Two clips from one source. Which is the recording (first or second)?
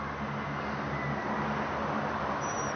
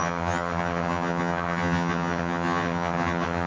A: first